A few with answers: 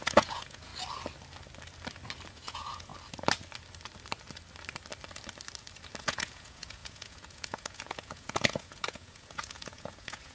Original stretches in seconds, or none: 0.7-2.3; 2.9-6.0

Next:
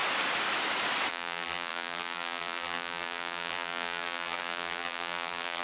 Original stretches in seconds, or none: 0.0-1.1

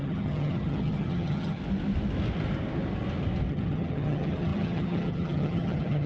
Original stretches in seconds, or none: 1.6-3.5

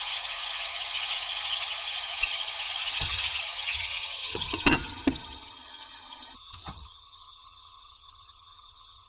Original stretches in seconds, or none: none

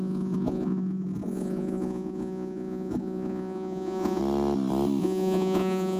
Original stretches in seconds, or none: 4.2-5.0

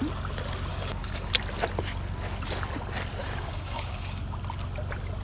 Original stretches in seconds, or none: 0.0-0.7; 1.3-3.2; 4.2-5.2

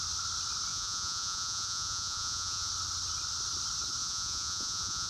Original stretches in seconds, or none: 0.0-0.7; 2.7-4.0